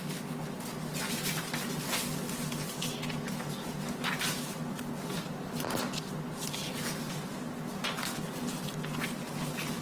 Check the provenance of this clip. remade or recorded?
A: recorded